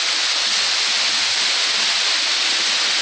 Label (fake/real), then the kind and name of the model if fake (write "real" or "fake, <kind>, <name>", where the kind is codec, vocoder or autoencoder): real